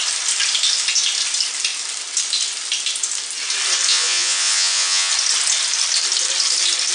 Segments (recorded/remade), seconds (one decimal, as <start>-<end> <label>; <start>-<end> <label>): 0.0-3.9 recorded; 3.9-5.1 remade; 5.1-6.9 recorded